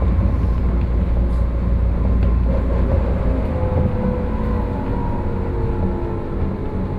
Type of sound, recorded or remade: recorded